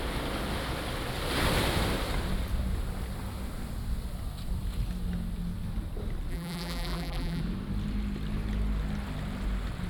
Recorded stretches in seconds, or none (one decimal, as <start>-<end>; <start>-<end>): 0.0-6.3; 7.4-9.9